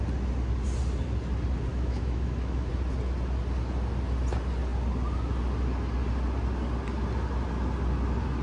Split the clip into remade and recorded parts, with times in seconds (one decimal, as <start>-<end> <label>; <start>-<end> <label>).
0.0-1.7 recorded; 1.7-2.7 remade; 2.7-8.4 recorded